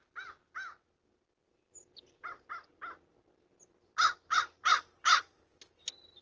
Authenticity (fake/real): real